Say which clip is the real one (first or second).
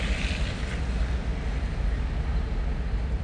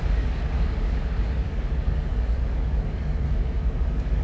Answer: first